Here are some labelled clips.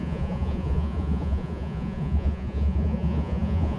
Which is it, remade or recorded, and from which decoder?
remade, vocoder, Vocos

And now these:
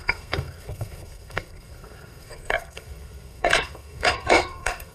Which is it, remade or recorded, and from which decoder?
remade, codec, SNAC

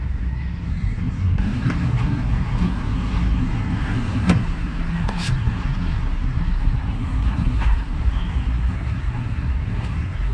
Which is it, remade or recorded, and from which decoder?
remade, codec, SNAC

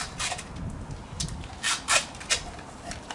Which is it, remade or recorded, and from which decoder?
recorded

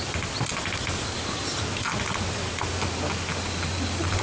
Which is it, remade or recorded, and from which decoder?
recorded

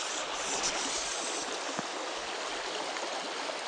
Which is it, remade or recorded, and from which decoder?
recorded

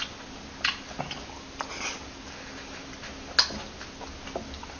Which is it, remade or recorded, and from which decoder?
recorded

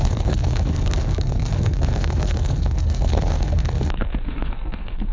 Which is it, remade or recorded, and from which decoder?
remade, codec, SNAC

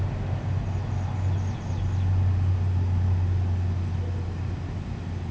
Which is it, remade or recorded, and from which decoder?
recorded